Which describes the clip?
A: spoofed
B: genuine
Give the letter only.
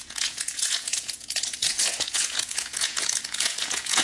A